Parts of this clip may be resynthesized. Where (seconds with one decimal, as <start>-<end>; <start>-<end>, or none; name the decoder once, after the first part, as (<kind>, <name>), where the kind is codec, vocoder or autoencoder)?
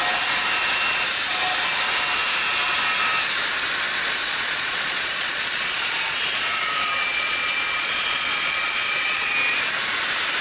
4.2-9.3 (vocoder, Vocos)